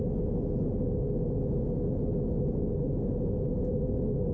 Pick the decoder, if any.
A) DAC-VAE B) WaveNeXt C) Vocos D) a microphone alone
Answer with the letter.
D